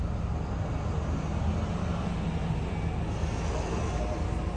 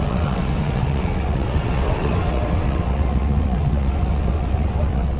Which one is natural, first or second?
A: first